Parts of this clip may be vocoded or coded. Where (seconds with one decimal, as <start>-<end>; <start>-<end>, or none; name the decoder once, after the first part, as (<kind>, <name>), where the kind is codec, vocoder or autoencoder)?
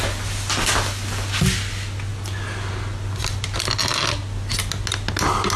none